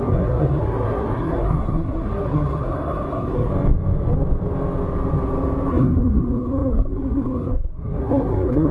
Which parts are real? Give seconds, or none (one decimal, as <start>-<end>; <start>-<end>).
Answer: 3.5-5.7